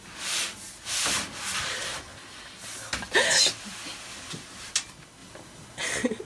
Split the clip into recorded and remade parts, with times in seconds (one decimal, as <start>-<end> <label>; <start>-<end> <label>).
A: 0.0-6.2 recorded